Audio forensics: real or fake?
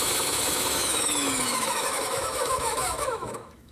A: fake